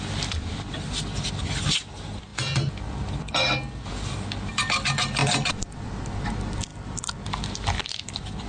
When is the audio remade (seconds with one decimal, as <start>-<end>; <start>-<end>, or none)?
none